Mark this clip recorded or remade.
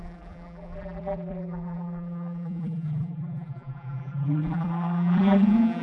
remade